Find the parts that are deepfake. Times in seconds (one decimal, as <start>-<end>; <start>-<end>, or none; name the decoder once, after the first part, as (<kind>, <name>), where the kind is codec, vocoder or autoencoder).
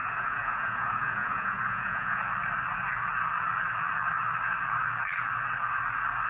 0.0-2.2 (vocoder, Vocos)